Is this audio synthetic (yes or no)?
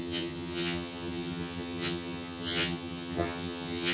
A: yes